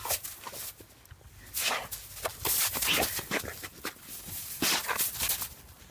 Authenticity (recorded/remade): recorded